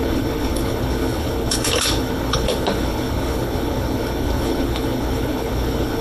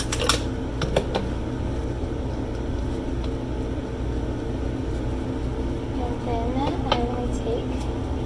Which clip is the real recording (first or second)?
second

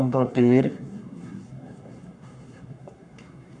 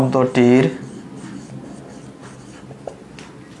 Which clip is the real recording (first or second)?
second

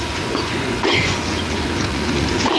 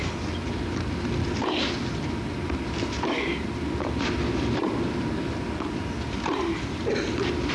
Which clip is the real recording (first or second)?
second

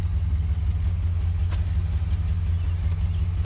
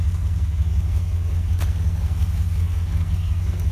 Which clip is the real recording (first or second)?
first